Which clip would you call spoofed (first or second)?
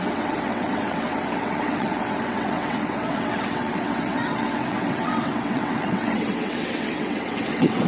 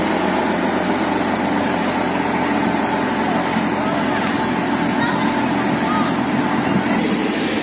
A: first